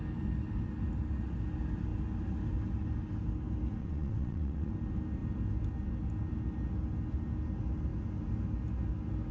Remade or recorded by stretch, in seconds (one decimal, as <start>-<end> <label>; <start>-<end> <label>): 0.0-3.8 recorded; 3.8-4.7 remade; 4.7-9.3 recorded